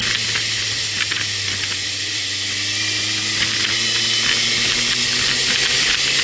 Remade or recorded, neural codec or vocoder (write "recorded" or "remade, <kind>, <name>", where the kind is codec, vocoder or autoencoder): recorded